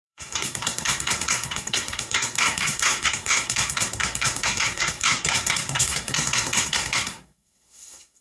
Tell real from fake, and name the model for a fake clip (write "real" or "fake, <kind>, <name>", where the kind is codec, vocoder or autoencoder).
fake, codec, SNAC